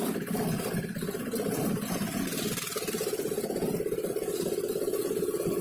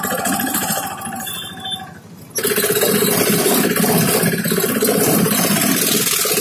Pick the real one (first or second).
second